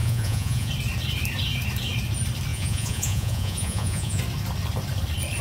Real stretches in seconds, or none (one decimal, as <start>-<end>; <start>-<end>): 0.7-2.5; 4.2-5.4